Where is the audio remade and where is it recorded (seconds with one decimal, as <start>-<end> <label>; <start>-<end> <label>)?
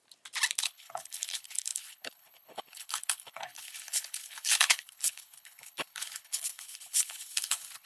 0.0-0.6 recorded; 0.6-7.9 remade